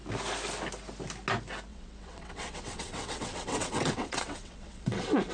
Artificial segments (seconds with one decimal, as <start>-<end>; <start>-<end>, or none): 1.7-5.3